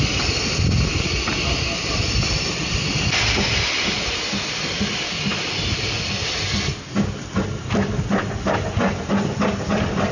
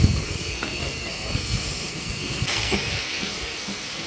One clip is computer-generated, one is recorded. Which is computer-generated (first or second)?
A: second